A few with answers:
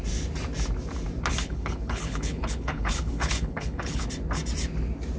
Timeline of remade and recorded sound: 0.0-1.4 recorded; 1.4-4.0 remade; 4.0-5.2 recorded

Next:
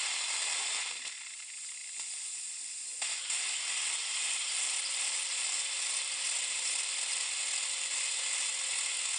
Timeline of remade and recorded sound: 0.0-4.0 recorded; 4.0-6.7 remade; 6.7-9.2 recorded

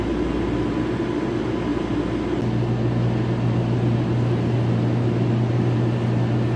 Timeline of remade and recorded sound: 0.0-6.6 recorded

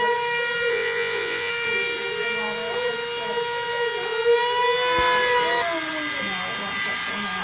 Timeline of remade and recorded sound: 0.0-0.7 recorded; 0.7-1.5 remade; 1.5-7.4 recorded

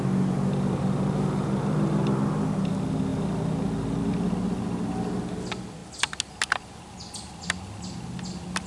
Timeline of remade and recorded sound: 0.0-8.7 recorded

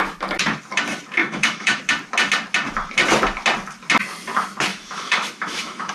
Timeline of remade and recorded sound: 0.0-1.2 recorded; 1.2-1.8 remade; 1.8-4.7 recorded; 4.7-5.9 remade

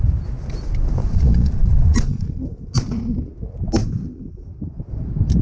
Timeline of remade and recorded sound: 0.0-1.0 recorded; 1.0-2.4 remade; 2.4-5.4 recorded